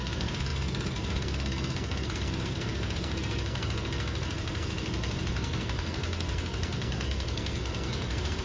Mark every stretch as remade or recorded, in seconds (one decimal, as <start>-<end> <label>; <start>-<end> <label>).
0.0-8.4 remade